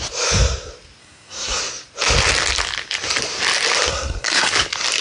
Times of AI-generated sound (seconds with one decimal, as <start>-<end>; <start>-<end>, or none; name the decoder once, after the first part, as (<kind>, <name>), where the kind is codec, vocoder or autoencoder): 1.0-1.6 (codec, SNAC); 3.9-4.5